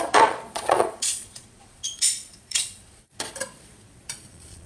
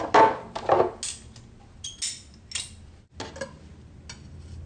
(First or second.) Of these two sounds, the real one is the second